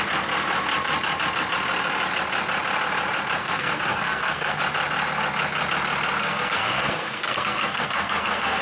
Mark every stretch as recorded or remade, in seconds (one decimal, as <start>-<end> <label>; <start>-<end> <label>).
0.0-3.4 recorded; 3.4-4.6 remade; 4.6-6.2 recorded; 6.2-8.6 remade